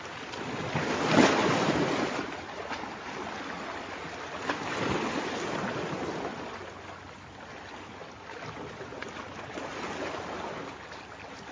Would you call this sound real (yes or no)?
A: yes